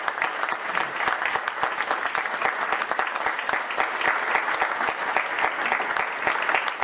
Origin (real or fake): real